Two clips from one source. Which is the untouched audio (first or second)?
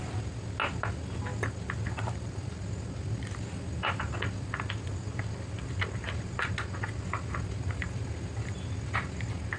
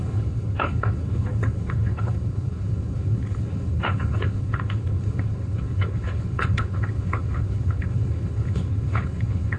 first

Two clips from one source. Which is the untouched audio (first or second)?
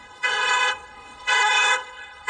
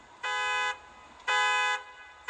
second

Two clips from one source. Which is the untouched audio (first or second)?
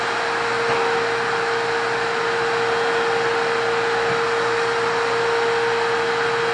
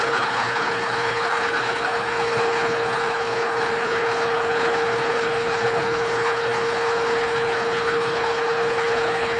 first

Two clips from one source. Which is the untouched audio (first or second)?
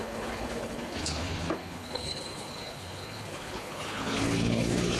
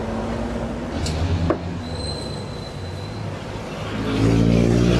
second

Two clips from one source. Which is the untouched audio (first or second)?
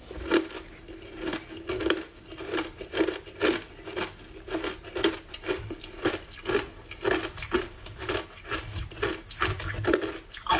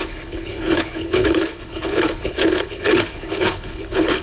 first